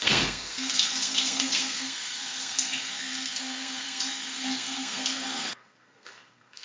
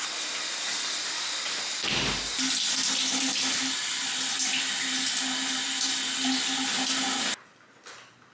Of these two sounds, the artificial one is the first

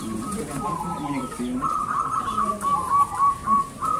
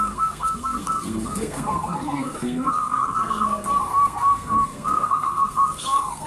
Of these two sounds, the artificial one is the second